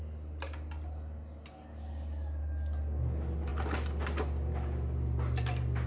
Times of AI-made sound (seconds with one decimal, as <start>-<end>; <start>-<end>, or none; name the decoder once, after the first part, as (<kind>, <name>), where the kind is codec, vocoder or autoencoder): none